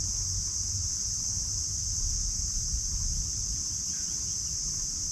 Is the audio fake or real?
real